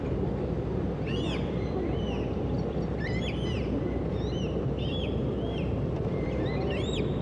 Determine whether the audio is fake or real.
fake